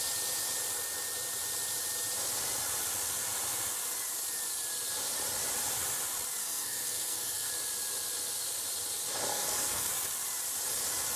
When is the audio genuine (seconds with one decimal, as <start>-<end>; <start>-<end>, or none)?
0.0-6.4; 7.5-9.3; 9.9-11.2